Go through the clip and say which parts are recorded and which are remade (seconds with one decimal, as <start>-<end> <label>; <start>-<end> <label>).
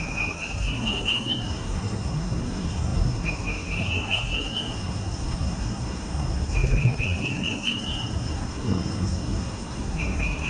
0.0-10.5 remade